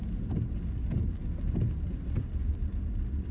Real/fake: real